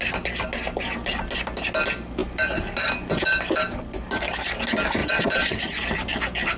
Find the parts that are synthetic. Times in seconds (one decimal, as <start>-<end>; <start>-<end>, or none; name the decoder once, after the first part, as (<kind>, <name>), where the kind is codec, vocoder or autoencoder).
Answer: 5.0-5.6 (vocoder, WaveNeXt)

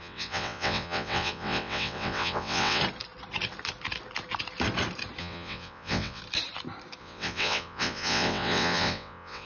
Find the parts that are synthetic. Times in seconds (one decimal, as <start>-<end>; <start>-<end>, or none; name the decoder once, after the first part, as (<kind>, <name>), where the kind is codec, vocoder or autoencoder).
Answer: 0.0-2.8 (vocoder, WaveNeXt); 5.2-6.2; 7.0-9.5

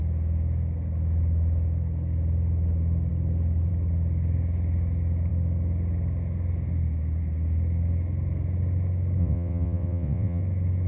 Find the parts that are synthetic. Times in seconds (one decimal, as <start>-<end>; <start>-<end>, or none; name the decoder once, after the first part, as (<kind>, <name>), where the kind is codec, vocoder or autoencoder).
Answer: 9.2-10.4 (vocoder, WaveNeXt)